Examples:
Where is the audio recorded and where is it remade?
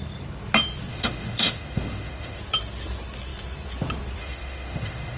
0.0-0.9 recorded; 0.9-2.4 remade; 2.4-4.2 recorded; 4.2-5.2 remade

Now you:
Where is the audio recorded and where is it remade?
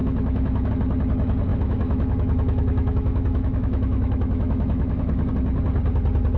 0.0-0.7 remade; 0.7-1.5 recorded; 1.5-5.3 remade; 5.3-6.4 recorded